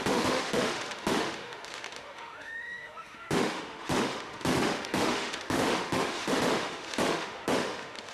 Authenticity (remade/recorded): remade